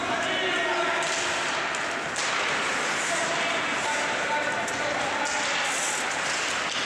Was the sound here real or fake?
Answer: real